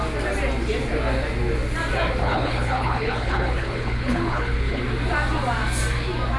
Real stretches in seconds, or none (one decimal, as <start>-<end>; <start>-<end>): 0.0-2.2; 4.8-6.4